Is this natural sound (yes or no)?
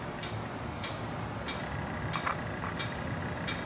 yes